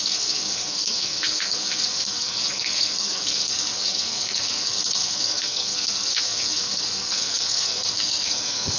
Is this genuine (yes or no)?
no